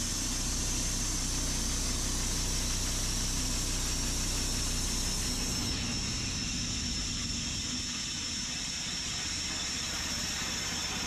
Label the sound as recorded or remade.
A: recorded